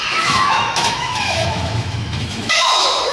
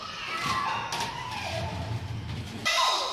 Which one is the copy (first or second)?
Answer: first